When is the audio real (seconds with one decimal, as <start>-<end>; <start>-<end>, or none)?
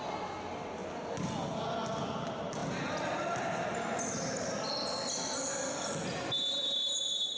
0.0-7.4